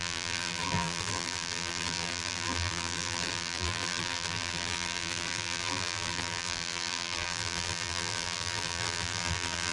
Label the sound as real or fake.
fake